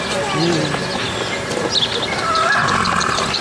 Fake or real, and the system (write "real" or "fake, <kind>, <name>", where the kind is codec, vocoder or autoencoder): real